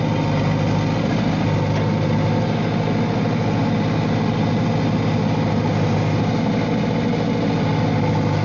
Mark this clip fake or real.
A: real